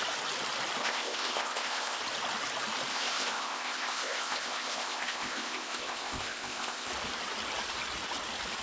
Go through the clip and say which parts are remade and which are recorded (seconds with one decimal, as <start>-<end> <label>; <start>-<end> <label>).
0.0-0.8 recorded; 0.8-2.0 remade; 2.0-2.9 recorded; 2.9-6.9 remade; 6.9-8.6 recorded